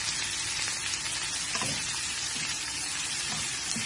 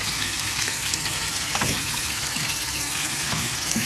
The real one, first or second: first